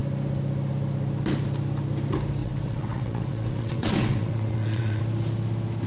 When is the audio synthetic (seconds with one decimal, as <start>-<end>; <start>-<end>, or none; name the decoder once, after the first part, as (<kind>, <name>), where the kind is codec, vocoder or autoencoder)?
2.4-5.0 (vocoder, WaveNeXt)